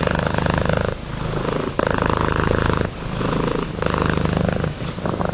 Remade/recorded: recorded